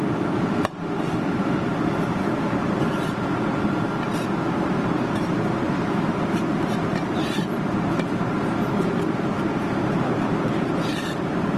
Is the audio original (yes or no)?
no